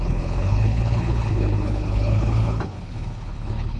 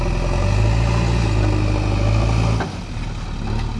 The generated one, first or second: first